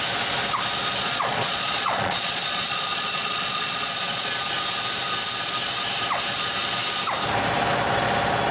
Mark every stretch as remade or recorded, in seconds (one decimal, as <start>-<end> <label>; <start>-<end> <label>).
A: 0.0-1.0 recorded; 1.0-4.3 remade; 4.3-8.5 recorded